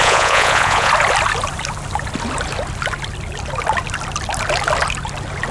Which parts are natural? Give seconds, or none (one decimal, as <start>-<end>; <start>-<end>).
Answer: 0.9-5.5